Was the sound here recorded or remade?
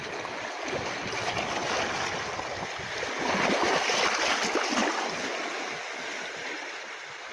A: recorded